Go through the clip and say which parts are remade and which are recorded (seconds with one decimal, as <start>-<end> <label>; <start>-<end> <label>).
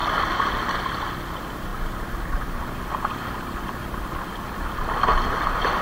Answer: 0.0-5.8 recorded